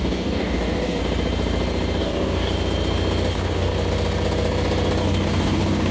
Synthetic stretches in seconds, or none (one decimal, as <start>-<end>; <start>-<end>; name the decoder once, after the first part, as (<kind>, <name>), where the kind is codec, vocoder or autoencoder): 0.0-1.0 (codec, DAC); 2.0-2.5; 3.3-3.7; 5.0-5.9